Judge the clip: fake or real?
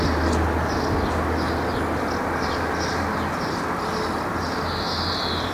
real